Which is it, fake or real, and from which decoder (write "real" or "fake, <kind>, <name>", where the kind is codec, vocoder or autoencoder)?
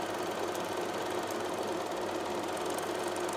real